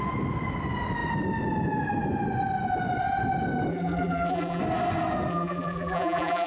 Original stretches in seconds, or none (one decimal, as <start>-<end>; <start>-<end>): 0.0-3.7; 4.6-5.3